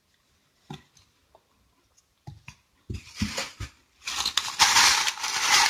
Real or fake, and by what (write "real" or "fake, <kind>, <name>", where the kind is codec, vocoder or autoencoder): real